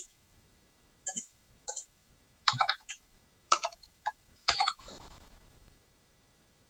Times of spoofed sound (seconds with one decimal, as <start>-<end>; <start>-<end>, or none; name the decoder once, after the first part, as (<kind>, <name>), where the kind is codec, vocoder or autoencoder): 0.0-6.7 (autoencoder, DAC-VAE)